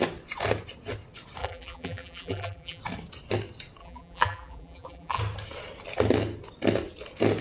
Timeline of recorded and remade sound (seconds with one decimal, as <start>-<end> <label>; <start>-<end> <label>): 0.0-1.4 recorded; 1.4-2.8 remade; 2.8-3.8 recorded; 3.8-5.2 remade; 5.2-7.4 recorded